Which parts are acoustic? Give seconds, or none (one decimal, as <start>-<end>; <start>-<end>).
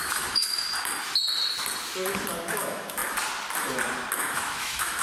0.7-2.5; 3.0-4.2